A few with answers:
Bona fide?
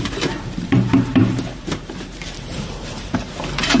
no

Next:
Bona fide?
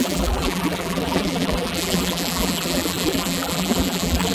no